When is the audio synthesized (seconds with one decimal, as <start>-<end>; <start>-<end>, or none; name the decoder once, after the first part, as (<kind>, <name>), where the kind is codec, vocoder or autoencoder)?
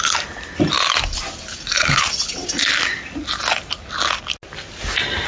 1.5-2.0 (vocoder, Vocos)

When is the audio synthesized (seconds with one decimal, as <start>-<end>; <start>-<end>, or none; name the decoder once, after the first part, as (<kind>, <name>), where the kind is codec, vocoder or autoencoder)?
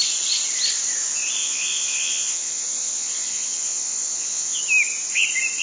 1.4-4.6 (vocoder, Vocos)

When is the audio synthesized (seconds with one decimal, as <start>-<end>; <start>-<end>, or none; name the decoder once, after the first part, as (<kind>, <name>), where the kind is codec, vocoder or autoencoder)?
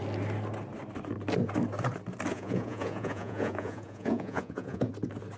2.3-4.9 (vocoder, Vocos)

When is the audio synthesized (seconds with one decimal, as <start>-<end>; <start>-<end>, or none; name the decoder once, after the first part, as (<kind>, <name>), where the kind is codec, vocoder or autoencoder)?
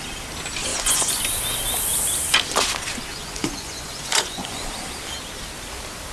0.7-1.2 (vocoder, Vocos); 3.1-4.7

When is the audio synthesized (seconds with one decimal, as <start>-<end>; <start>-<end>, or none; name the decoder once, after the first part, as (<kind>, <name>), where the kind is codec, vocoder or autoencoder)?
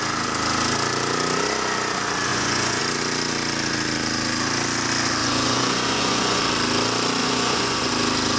2.3-2.8 (vocoder, Vocos); 5.2-6.4; 7.2-7.9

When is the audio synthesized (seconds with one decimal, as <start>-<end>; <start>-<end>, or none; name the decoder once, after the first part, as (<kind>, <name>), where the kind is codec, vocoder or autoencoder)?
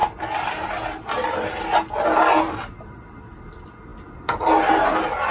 none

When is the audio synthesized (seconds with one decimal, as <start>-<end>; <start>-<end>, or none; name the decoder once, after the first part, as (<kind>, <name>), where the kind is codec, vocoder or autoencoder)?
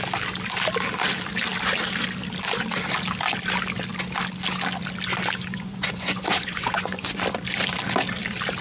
5.5-7.2 (vocoder, Vocos)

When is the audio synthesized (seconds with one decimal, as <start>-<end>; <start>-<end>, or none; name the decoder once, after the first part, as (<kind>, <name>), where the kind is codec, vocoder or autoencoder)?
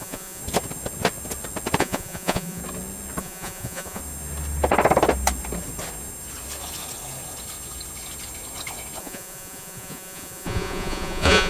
0.0-0.4 (vocoder, Vocos); 1.8-2.6; 3.2-4.0; 9.0-11.5